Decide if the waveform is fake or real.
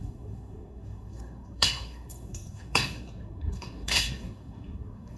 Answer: fake